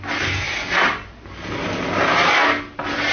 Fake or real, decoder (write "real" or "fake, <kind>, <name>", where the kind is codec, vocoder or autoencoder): real